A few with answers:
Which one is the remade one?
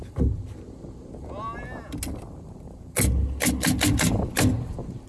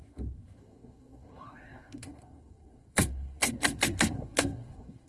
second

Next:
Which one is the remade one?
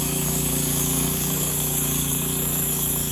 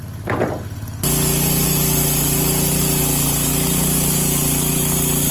first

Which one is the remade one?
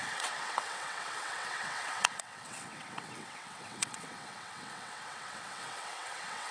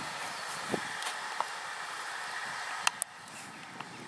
first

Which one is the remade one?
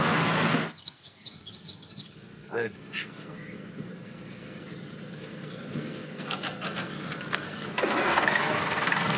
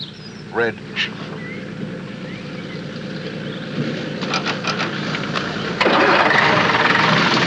first